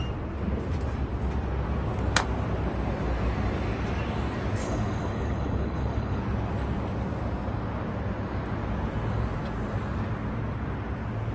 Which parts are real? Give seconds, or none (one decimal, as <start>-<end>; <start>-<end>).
0.0-4.6; 6.2-11.3